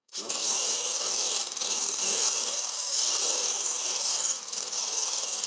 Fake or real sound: fake